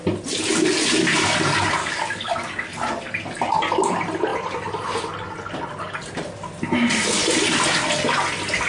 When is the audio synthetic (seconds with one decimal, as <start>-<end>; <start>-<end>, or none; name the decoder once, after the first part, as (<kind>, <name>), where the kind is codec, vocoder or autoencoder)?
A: 1.8-2.7 (codec, DAC)

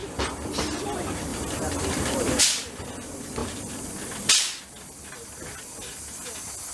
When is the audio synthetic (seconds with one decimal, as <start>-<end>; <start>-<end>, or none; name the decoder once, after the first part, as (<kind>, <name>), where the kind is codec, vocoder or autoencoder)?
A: 1.3-2.4 (vocoder, BigVGAN v2); 3.4-3.9

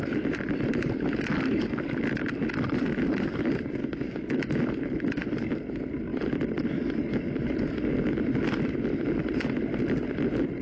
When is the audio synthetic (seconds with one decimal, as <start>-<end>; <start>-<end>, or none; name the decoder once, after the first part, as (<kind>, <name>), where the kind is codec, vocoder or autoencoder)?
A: 3.8-4.6 (autoencoder, DAC-VAE)

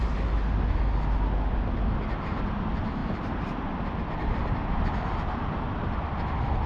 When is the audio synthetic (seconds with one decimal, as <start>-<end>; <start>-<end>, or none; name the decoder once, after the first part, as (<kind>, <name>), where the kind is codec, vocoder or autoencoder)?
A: 3.0-3.8 (vocoder, BigVGAN v2)

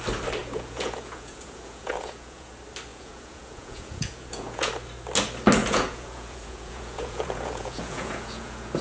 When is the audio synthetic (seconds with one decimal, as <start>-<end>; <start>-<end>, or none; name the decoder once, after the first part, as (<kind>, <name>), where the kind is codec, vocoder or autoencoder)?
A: 0.4-2.5 (vocoder, Vocos); 2.9-4.7; 5.6-8.8

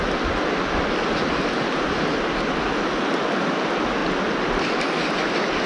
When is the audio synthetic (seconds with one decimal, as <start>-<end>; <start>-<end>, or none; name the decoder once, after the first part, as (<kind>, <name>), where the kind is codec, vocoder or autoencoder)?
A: none

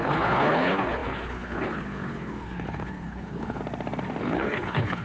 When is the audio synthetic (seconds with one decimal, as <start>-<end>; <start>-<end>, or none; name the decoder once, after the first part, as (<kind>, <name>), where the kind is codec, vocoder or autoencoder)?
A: 0.0-3.6 (codec, HILCodec); 4.2-5.0

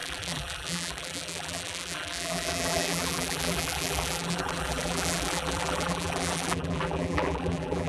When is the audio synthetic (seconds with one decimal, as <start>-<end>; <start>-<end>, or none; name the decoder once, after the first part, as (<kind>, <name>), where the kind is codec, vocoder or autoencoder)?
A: 0.0-7.9 (vocoder, BigVGAN v2)